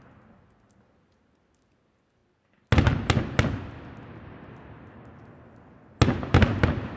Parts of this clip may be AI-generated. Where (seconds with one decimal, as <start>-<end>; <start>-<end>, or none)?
none